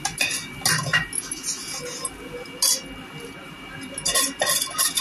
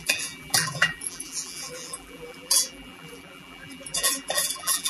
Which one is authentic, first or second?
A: first